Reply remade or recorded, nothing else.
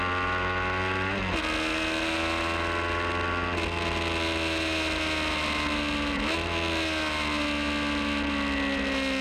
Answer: recorded